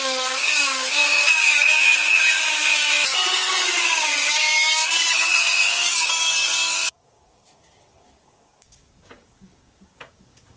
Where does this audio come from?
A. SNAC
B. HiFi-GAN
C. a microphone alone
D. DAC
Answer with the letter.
D